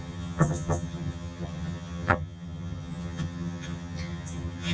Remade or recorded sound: remade